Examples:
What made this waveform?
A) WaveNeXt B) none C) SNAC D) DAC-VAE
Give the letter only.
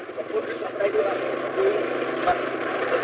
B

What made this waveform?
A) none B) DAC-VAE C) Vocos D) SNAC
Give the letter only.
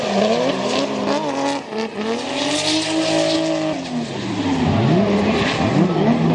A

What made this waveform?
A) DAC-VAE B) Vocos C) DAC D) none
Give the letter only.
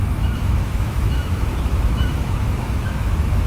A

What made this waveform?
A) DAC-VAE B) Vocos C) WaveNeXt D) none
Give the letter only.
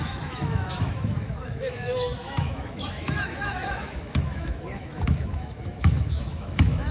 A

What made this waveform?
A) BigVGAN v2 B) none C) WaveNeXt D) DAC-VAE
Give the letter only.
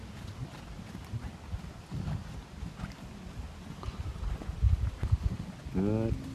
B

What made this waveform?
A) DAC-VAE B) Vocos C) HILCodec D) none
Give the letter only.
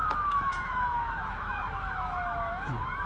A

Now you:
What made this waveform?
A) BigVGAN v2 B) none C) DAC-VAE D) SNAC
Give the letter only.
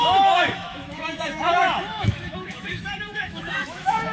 C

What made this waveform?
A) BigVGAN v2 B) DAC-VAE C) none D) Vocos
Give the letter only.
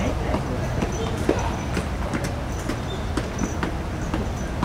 C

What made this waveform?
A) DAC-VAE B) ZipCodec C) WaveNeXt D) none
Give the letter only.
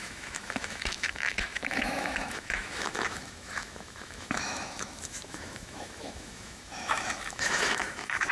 A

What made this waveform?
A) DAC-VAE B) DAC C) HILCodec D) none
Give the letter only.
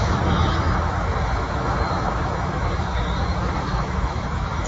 A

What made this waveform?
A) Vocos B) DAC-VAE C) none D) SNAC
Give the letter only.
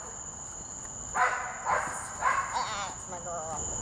C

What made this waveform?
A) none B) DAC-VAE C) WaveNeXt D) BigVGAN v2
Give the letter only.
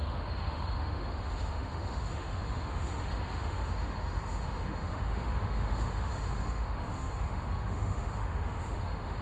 B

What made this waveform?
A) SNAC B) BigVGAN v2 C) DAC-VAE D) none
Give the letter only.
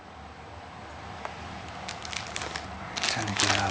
D